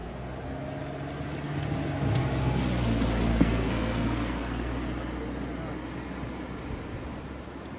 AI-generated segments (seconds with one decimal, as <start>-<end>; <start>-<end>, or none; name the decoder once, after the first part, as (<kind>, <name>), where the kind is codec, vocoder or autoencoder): 3.3-4.7 (codec, SNAC)